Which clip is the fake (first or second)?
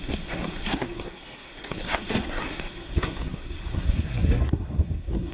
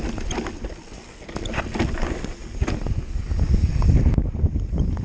first